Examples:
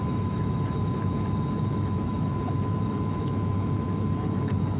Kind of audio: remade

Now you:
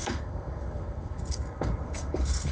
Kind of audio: remade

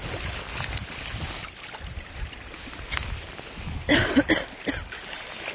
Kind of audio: recorded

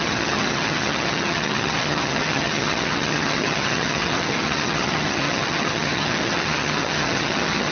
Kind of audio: remade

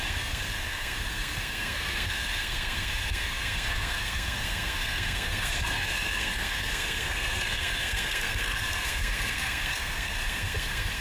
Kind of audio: remade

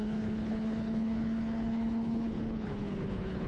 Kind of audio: remade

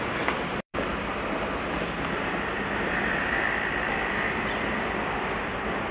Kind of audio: remade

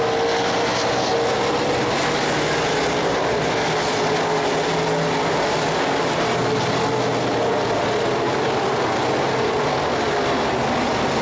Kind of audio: recorded